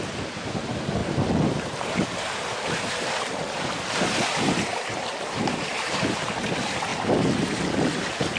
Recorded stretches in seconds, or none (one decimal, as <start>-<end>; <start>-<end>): 0.0-1.0; 3.5-8.4